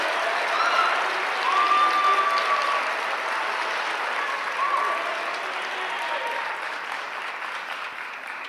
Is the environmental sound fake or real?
real